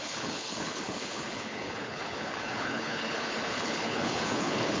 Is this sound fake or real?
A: fake